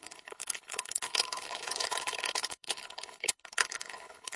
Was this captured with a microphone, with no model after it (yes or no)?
no